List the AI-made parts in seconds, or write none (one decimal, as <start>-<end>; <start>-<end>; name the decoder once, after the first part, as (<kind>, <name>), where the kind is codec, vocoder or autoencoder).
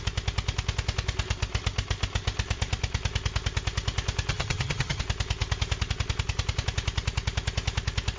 4.3-5.0 (vocoder, HiFi-GAN)